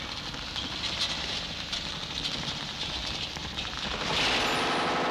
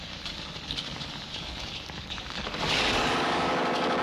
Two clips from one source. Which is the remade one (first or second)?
second